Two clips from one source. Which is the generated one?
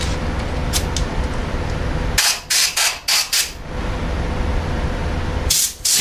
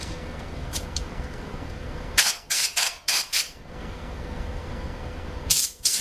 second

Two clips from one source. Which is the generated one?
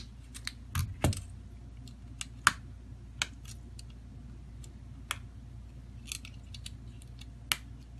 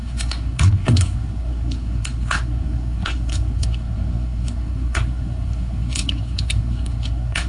second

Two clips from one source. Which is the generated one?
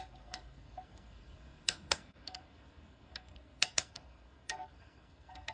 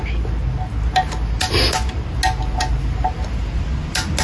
first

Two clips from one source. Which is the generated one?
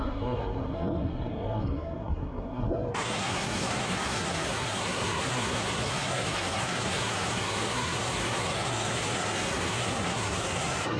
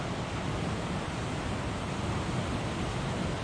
first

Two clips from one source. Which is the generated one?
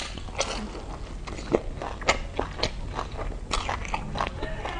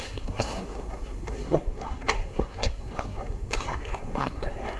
second